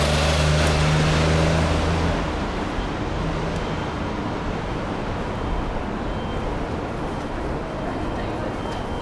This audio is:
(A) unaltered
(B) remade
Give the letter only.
A